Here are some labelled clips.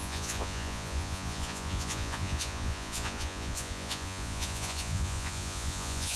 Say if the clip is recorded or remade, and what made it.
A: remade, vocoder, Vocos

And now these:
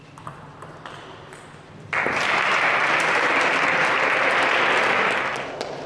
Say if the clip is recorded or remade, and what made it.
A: recorded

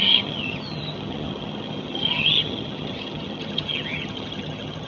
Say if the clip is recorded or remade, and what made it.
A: remade, vocoder, HiFi-GAN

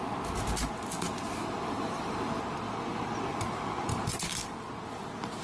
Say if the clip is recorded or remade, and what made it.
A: recorded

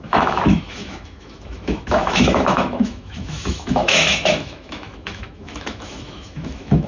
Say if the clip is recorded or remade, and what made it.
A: remade, autoencoder, DAC-VAE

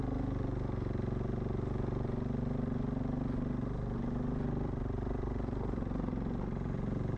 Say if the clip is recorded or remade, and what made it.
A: recorded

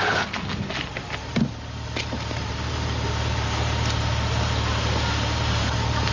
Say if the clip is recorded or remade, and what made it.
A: recorded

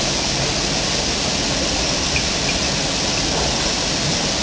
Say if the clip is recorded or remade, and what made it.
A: recorded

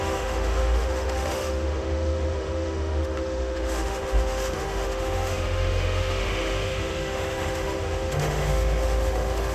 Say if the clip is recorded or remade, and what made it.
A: remade, autoencoder, DAC-VAE